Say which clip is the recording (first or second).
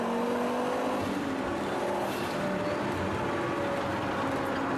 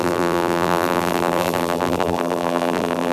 first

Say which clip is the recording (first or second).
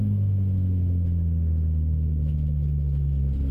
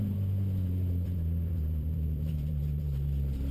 first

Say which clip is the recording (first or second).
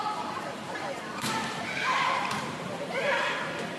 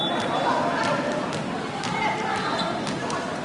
second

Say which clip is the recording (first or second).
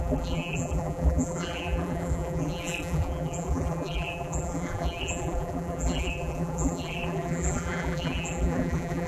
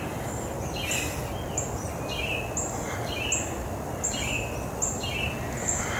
second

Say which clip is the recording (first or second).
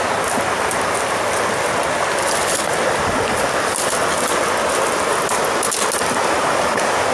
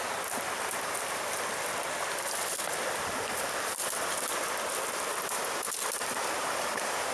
first